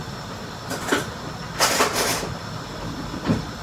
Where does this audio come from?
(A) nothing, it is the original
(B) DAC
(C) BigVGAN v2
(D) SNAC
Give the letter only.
C